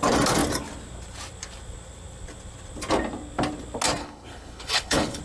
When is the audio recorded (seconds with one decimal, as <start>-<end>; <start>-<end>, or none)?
0.0-4.0